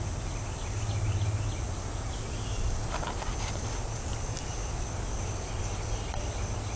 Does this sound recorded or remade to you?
recorded